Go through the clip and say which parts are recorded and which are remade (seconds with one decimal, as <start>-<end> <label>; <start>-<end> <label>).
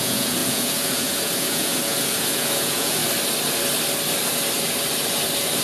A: 0.0-3.0 remade; 3.0-5.6 recorded